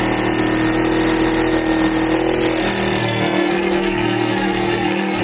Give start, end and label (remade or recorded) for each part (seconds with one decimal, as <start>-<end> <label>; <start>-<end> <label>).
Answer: 0.0-3.0 recorded; 3.0-5.2 remade